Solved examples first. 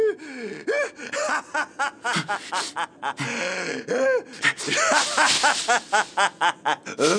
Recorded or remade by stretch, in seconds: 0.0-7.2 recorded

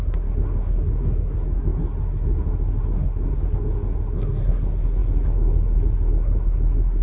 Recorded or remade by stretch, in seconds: 0.0-7.0 remade

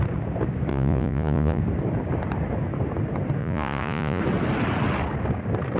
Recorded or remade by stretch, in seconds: 0.0-0.7 recorded; 0.7-1.6 remade; 1.6-3.4 recorded; 3.4-4.2 remade; 4.2-5.8 recorded

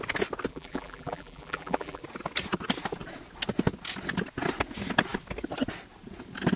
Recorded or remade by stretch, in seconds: 0.0-0.5 recorded; 0.5-2.0 remade; 2.0-6.6 recorded

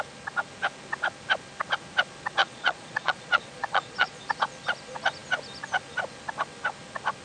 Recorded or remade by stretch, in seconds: 0.0-2.4 recorded; 2.4-4.2 remade; 4.2-7.2 recorded

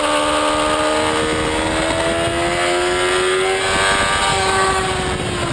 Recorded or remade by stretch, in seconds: 0.0-4.3 recorded; 4.3-4.9 remade; 4.9-5.5 recorded